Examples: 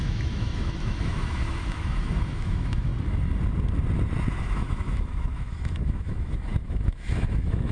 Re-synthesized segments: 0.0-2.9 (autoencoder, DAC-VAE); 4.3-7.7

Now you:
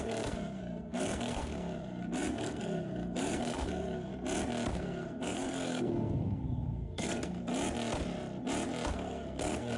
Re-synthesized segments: 0.0-4.1 (codec, SNAC); 4.7-7.5; 8.9-9.8

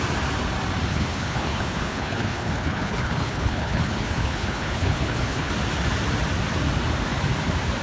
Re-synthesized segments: 0.9-5.5 (codec, HILCodec)

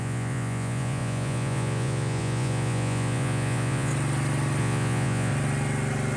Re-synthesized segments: 0.0-3.9 (vocoder, Vocos); 4.6-5.3

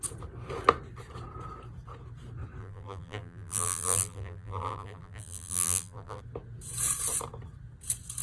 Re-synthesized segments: 2.6-6.2 (vocoder, BigVGAN v2)

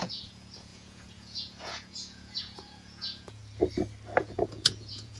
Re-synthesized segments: 0.0-3.4 (vocoder, Vocos); 4.2-5.2

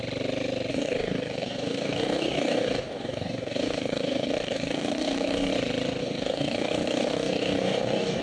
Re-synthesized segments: 0.7-5.5 (codec, DAC); 6.0-8.2

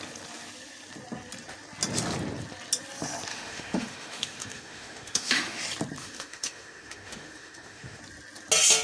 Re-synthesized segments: 3.3-5.6 (autoencoder, DAC-VAE); 6.0-8.0